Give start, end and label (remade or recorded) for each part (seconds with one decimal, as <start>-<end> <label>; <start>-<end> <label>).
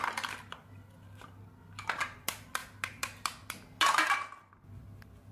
0.0-5.3 recorded